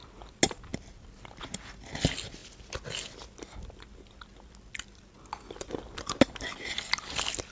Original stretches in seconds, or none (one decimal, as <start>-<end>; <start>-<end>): 0.0-7.5